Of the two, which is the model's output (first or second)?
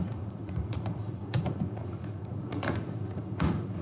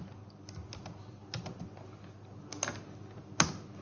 first